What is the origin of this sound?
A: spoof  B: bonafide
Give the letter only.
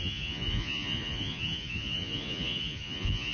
A